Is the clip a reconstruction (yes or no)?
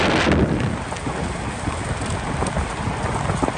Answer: no